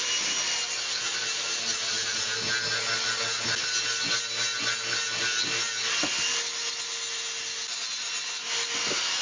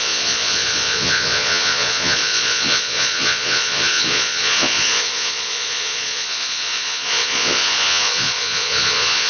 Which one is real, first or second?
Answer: first